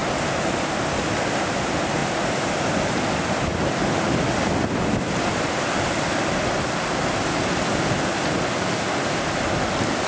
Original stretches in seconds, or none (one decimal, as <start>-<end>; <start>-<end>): 0.0-10.1